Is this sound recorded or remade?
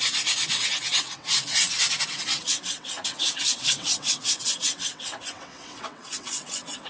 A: remade